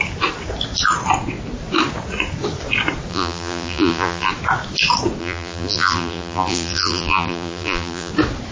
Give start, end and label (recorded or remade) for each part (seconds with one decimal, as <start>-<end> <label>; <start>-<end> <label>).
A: 0.0-3.1 recorded; 3.1-4.3 remade; 4.3-5.2 recorded; 5.2-8.1 remade; 8.1-8.5 recorded